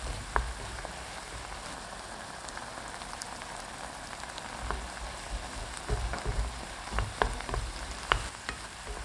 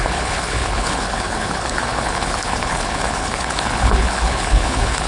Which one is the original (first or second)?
first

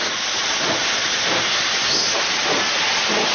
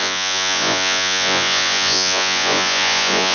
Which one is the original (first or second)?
first